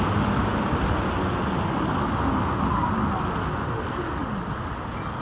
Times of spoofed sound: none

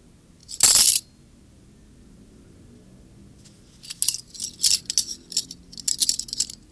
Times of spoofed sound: none

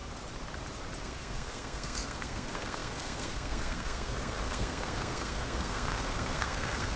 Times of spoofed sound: 1.0-7.0

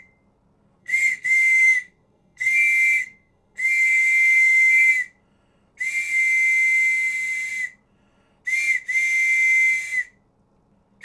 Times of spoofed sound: 0.8-4.9

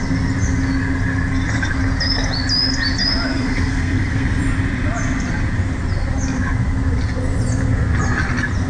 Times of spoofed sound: 3.3-4.4